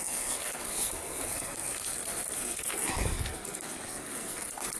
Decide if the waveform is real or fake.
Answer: fake